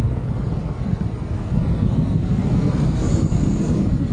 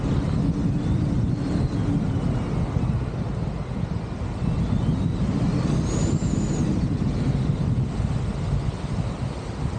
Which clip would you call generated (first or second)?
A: first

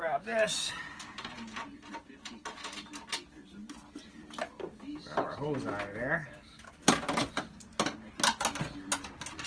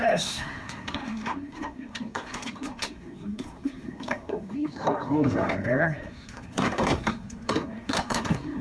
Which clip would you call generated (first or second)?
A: second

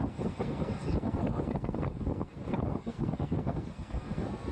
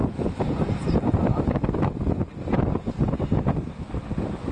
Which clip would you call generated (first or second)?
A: first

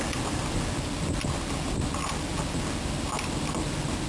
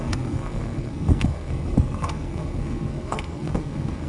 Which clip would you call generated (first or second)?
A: second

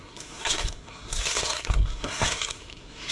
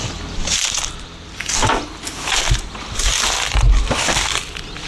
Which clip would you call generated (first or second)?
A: first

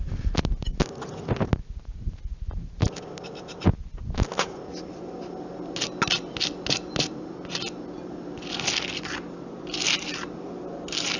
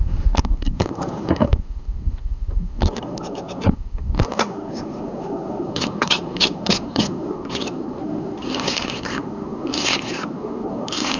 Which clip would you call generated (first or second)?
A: second